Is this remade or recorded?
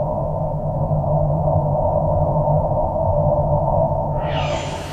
remade